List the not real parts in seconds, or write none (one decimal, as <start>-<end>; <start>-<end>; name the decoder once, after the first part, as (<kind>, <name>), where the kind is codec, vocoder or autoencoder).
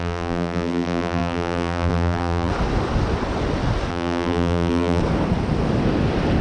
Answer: 0.0-2.5 (vocoder, BigVGAN v2); 3.9-5.0